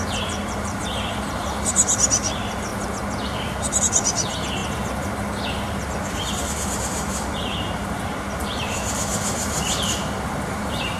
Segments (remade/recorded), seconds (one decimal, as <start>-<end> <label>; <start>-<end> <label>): 0.0-2.7 remade; 2.7-3.8 recorded; 3.8-4.6 remade; 4.6-5.9 recorded; 5.9-9.1 remade; 9.1-10.0 recorded; 10.0-11.0 remade